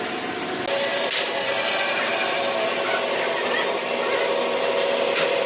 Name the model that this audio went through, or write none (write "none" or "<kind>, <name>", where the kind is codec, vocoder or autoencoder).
none